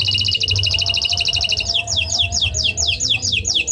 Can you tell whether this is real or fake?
real